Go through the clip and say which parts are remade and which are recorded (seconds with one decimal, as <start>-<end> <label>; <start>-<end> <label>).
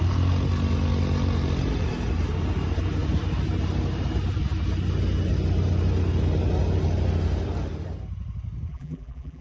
0.0-8.7 recorded; 8.7-9.4 remade